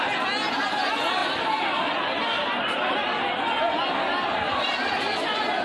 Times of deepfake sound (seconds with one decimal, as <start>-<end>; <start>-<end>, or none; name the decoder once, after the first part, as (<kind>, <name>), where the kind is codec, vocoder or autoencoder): 1.2-1.9 (vocoder, BigVGAN v2); 2.4-3.8